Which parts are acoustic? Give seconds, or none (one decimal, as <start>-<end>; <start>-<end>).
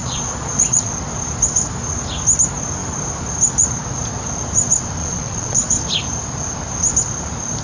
0.9-5.0; 5.8-7.6